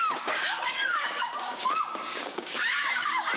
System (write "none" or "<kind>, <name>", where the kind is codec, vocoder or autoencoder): codec, DAC